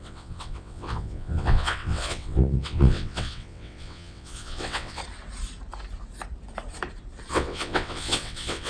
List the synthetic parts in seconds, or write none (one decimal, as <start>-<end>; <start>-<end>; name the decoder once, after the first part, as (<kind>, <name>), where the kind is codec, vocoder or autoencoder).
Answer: 0.0-5.0 (vocoder, WaveNeXt); 7.3-8.7